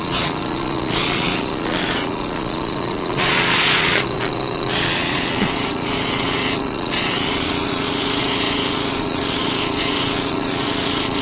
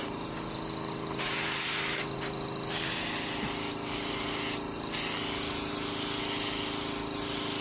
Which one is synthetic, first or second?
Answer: first